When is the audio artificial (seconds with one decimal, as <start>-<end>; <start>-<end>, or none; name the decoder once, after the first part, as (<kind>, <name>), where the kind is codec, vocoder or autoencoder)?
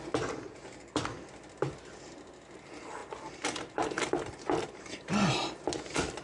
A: none